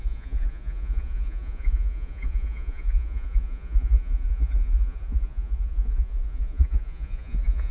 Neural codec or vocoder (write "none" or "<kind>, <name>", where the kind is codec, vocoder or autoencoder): vocoder, Vocos